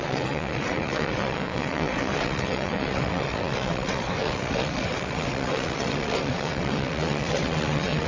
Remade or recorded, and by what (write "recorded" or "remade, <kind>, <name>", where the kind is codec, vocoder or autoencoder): remade, vocoder, WaveNeXt